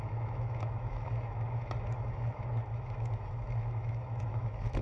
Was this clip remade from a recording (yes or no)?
yes